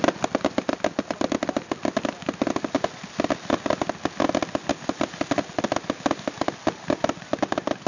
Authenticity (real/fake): real